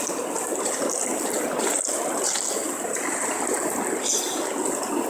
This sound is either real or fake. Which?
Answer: real